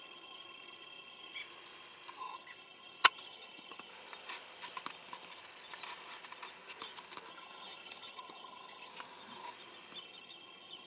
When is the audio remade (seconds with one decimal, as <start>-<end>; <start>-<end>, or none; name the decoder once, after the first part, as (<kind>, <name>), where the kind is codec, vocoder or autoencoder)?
0.0-1.4 (vocoder, HiFi-GAN); 2.2-3.9; 7.3-8.9; 10.0-10.9